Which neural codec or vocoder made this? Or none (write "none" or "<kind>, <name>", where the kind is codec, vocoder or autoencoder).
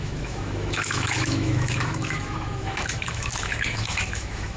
autoencoder, DAC-VAE